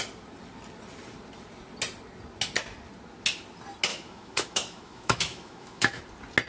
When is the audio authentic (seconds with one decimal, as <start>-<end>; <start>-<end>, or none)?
0.0-3.9; 6.0-6.5

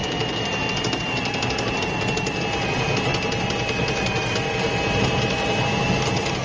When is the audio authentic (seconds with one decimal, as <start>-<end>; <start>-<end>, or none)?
0.0-6.4

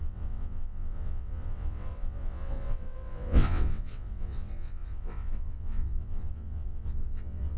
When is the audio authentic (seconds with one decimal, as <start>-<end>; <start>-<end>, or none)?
none

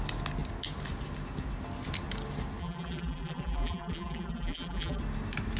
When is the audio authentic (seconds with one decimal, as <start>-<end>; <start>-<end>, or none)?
0.0-2.6; 5.0-5.6

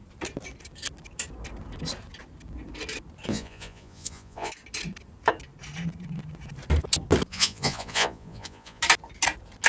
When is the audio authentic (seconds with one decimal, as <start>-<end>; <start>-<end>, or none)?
0.0-3.3; 4.5-7.3; 8.8-9.7